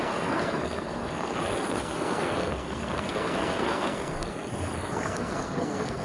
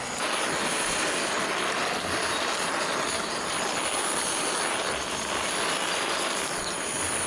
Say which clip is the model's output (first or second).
first